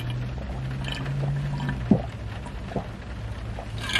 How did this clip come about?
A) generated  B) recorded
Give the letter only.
B